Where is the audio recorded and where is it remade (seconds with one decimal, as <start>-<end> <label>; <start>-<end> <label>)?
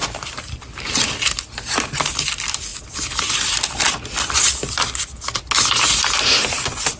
0.0-7.0 recorded